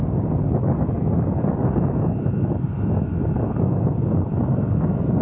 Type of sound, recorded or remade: recorded